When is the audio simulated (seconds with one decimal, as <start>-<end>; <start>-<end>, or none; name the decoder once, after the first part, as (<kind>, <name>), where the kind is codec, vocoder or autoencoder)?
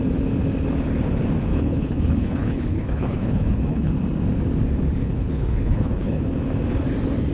1.5-3.9 (codec, HILCodec); 5.0-6.2